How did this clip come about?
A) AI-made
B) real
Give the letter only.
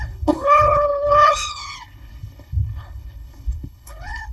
A